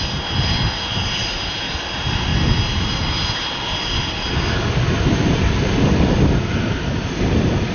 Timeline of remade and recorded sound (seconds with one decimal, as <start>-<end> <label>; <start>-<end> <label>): 0.0-7.7 recorded